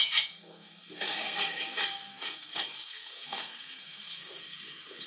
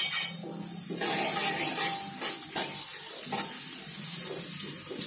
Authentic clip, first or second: second